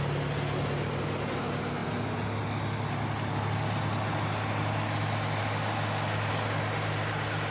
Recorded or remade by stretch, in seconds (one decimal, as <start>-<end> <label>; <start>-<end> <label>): 0.0-7.5 recorded